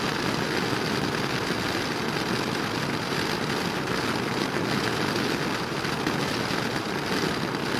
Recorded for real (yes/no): yes